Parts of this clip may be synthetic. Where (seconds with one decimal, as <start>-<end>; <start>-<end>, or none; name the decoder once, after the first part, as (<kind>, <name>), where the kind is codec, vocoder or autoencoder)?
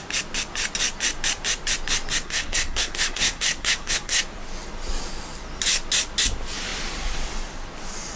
2.2-4.2 (codec, SNAC)